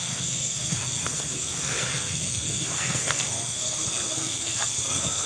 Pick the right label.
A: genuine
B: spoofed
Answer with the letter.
B